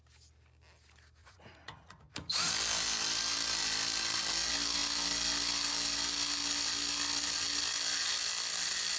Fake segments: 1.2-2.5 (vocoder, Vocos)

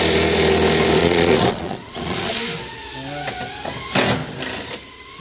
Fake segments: 1.0-2.4 (vocoder, Vocos)

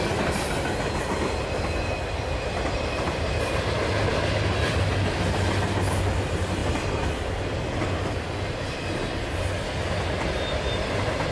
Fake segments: none

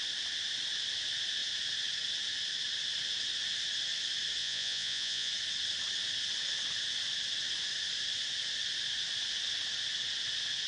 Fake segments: 4.4-5.3 (vocoder, Vocos)

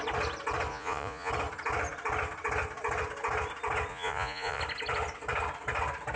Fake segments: 0.7-1.3 (vocoder, Vocos); 3.9-4.6

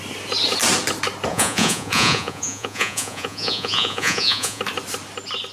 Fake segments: 1.3-4.6 (vocoder, Vocos)

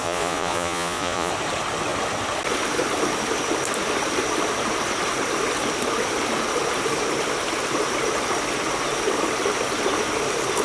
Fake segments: 0.0-1.3 (vocoder, Vocos)

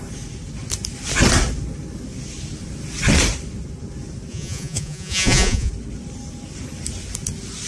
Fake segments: 4.3-5.7 (vocoder, Vocos)